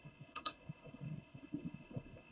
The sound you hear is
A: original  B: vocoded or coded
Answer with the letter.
B